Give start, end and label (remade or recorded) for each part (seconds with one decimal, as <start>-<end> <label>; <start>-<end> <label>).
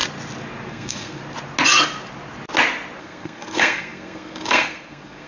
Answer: 0.0-0.7 recorded; 0.7-1.2 remade; 1.2-3.0 recorded; 3.0-5.3 remade